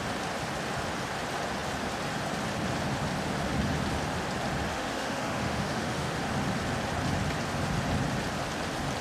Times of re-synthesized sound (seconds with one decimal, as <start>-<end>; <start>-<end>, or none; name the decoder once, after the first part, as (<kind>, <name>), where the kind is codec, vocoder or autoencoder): 4.7-6.2 (autoencoder, DAC-VAE)